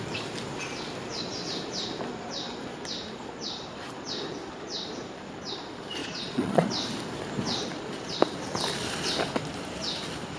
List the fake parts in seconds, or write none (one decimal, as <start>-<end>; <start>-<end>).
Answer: 6.0-6.7